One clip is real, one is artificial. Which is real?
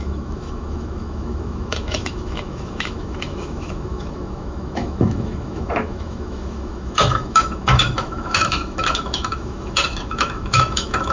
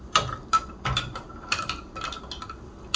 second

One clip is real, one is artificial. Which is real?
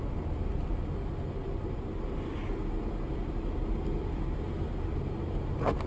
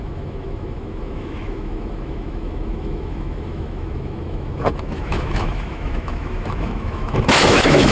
first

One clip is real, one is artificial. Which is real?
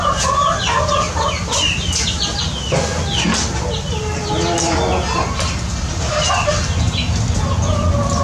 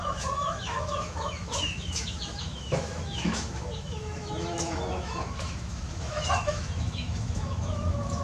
first